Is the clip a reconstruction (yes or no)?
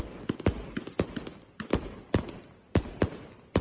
no